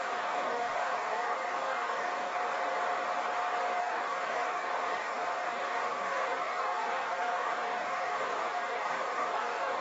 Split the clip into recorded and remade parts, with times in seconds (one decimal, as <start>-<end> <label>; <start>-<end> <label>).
0.0-2.4 remade; 2.4-3.8 recorded; 3.8-9.8 remade